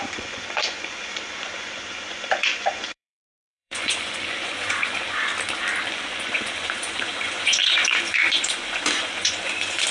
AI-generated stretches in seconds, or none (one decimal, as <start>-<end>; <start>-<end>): 0.0-5.3; 5.9-9.9